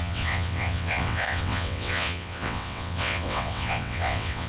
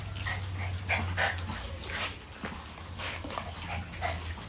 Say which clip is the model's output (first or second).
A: first